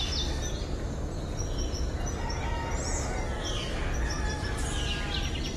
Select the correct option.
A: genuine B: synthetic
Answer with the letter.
A